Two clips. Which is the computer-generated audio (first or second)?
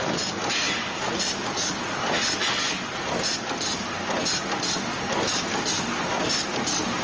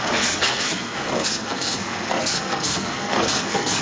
second